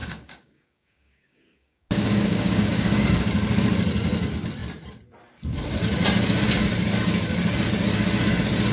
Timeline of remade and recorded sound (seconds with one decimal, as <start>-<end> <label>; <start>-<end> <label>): 0.0-3.1 remade; 3.1-8.7 recorded